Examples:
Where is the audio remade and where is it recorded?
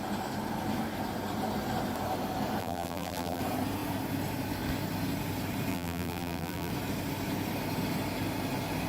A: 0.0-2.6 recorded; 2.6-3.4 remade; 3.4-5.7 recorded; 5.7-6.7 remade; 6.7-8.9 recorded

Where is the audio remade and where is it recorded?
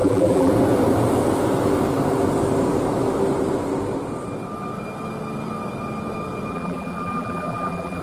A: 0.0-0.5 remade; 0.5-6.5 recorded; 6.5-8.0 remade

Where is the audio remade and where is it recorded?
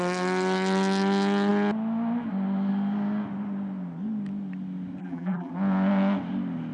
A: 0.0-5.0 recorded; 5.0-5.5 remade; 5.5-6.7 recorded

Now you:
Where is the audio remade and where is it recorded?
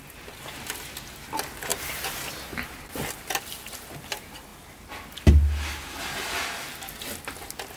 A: 0.0-7.8 recorded